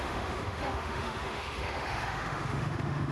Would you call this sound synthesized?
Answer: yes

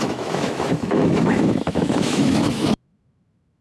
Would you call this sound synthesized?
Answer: yes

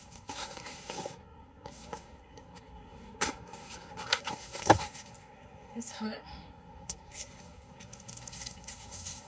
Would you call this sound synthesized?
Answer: yes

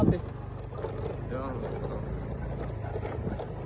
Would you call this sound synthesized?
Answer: no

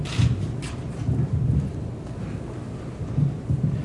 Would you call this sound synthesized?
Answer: no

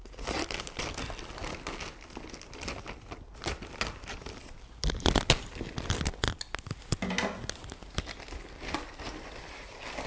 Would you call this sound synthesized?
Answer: no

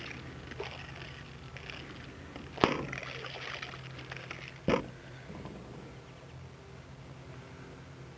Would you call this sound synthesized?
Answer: no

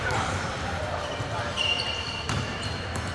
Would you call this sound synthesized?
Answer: yes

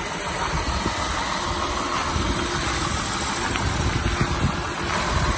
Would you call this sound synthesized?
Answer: no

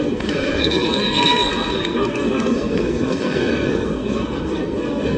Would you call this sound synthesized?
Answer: yes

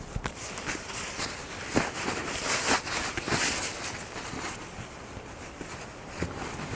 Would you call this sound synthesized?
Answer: no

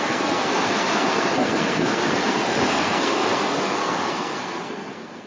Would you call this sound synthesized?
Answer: yes